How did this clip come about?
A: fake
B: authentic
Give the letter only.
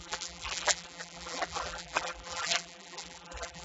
A